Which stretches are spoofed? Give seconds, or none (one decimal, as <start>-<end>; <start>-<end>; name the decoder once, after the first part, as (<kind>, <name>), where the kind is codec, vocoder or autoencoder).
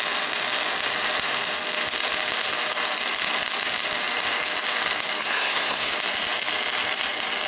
5.2-5.9 (codec, SNAC)